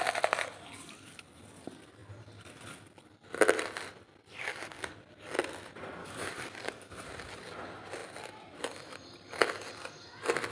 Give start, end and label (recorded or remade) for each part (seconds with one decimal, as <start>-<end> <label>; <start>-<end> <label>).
0.0-4.3 recorded; 4.3-4.9 remade; 4.9-6.0 recorded; 6.0-6.9 remade; 6.9-10.5 recorded